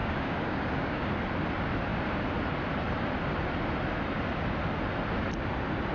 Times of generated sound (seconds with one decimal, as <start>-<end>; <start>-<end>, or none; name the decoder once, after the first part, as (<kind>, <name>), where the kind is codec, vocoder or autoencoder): 0.0-1.1 (codec, DAC)